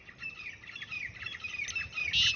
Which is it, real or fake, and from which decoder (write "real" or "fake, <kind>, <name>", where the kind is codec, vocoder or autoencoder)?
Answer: real